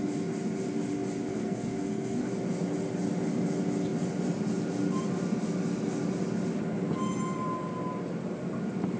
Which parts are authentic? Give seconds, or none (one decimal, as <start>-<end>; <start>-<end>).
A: 0.0-1.3; 2.3-9.0